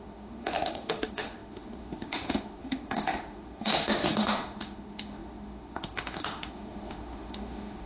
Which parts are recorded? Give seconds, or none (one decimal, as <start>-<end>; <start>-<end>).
none